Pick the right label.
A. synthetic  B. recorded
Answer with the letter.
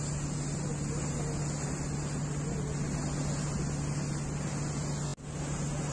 B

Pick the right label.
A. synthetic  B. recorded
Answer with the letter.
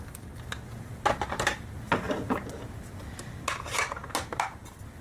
B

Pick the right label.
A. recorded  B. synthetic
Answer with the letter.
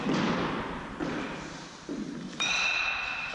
A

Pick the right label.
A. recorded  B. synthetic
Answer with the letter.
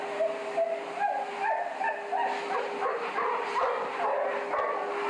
A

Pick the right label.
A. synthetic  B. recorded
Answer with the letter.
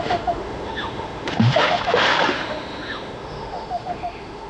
A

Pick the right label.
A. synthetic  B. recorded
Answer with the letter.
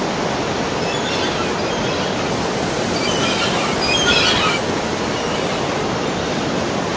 B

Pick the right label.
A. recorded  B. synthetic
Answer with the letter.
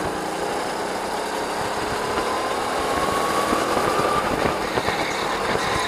A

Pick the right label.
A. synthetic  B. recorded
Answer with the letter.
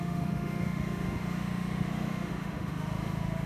A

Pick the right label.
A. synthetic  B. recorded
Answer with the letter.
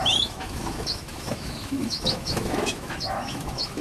A